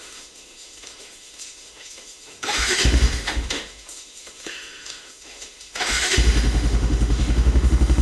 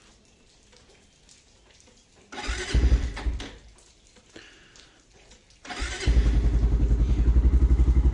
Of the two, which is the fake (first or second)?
first